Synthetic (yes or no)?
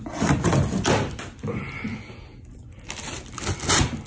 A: no